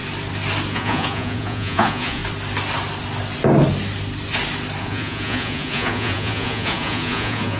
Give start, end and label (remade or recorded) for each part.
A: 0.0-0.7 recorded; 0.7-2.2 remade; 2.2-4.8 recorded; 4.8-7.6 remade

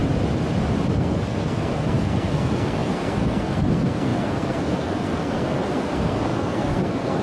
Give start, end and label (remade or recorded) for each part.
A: 0.0-0.9 recorded; 0.9-7.2 remade

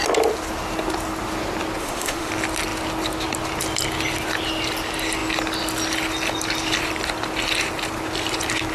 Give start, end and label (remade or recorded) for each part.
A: 0.0-1.8 recorded; 1.8-2.3 remade; 2.3-8.7 recorded

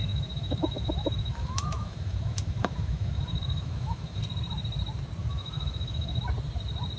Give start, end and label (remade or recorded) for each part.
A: 0.0-4.2 remade; 4.2-5.2 recorded; 5.2-6.2 remade; 6.2-7.0 recorded

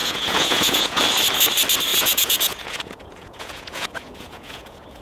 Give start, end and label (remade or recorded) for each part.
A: 0.0-1.0 remade; 1.0-1.9 recorded; 1.9-5.0 remade

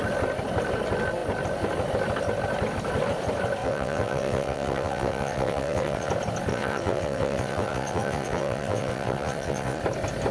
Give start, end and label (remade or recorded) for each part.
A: 0.0-3.6 recorded; 3.6-6.1 remade; 6.1-6.5 recorded; 6.5-9.8 remade; 9.8-10.3 recorded

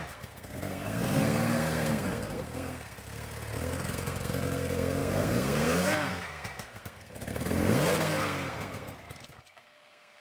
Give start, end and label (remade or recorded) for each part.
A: 0.0-10.2 remade